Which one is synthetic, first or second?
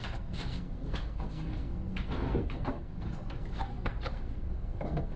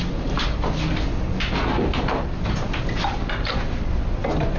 first